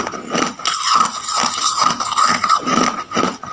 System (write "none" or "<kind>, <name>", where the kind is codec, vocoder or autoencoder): none